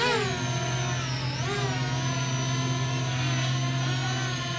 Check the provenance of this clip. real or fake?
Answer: real